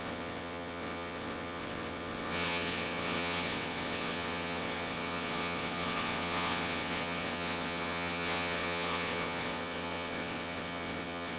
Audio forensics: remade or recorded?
remade